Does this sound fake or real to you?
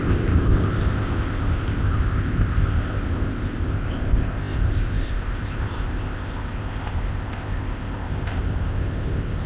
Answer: fake